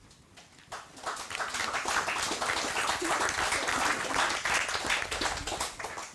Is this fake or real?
real